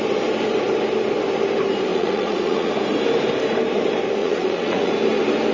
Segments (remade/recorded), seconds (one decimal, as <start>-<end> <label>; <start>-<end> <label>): 0.0-1.9 recorded; 1.9-2.7 remade; 2.7-4.2 recorded; 4.2-4.9 remade; 4.9-5.5 recorded